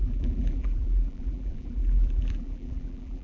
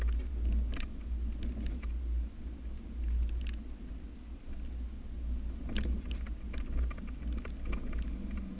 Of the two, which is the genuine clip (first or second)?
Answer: second